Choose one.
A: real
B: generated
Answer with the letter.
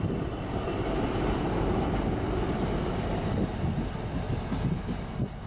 A